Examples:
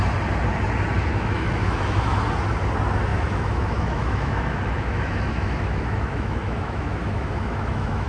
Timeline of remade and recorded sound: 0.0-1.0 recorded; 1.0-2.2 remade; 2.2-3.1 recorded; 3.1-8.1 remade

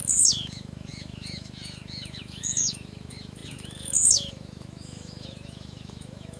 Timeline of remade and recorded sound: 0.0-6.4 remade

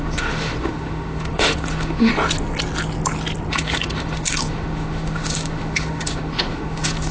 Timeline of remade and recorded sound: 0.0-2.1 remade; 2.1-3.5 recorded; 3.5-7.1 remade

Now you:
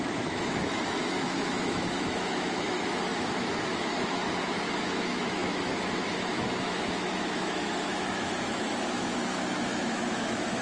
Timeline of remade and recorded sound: 0.0-10.6 remade

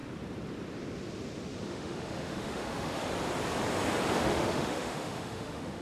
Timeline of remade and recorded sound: 0.0-1.7 recorded; 1.7-3.0 remade; 3.0-4.1 recorded; 4.1-5.8 remade

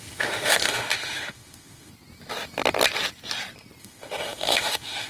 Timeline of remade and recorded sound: 0.0-1.9 remade; 1.9-3.8 recorded; 3.8-5.1 remade

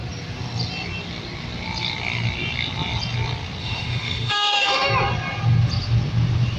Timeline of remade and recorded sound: 0.0-3.6 recorded; 3.6-4.9 remade; 4.9-6.6 recorded